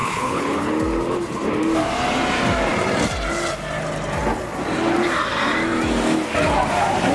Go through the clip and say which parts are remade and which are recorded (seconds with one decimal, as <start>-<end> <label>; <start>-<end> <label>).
0.0-0.7 remade; 0.7-7.1 recorded